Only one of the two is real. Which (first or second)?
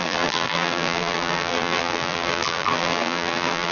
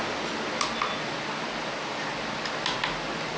second